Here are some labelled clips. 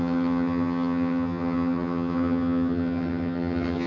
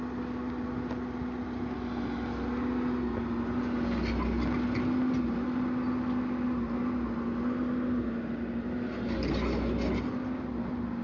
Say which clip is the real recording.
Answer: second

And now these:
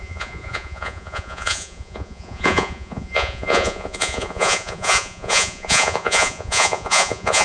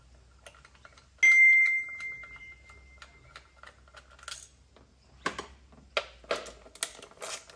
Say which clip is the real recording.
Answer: second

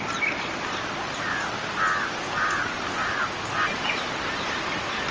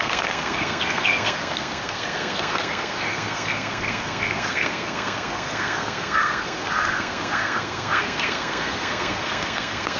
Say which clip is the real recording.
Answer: first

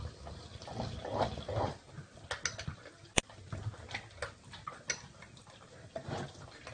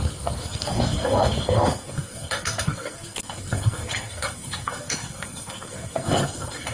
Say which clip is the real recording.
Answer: first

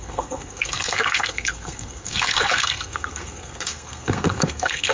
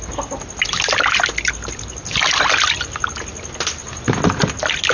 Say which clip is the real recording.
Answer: second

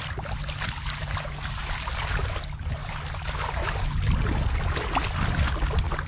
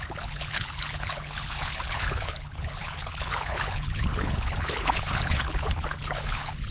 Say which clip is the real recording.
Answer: first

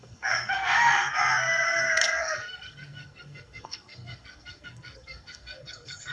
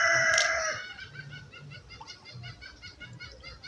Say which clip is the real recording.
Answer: second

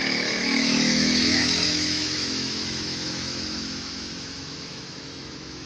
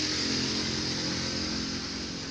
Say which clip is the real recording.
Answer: second